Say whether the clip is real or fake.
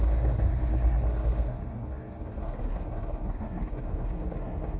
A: fake